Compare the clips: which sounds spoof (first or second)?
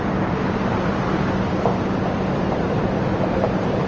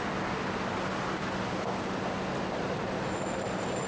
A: first